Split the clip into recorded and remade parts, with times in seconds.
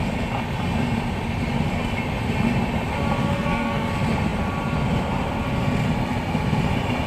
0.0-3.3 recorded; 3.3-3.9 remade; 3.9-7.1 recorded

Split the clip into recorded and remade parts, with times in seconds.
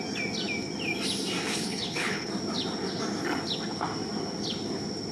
0.0-1.5 recorded; 1.5-2.3 remade; 2.3-5.1 recorded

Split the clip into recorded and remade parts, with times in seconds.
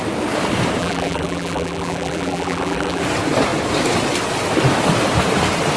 0.0-0.8 recorded; 0.8-3.0 remade; 3.0-5.8 recorded